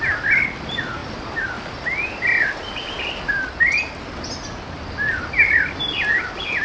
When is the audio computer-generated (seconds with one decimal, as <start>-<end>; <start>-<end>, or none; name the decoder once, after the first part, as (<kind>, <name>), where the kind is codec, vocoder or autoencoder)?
none